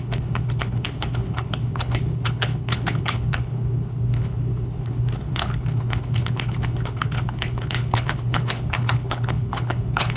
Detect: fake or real fake